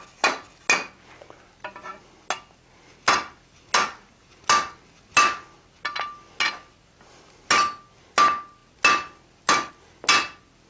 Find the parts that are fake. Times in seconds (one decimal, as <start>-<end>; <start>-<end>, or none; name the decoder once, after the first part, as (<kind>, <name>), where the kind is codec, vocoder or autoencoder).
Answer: none